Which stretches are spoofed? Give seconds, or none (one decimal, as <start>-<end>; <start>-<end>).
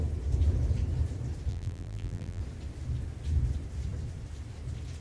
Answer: 1.5-2.4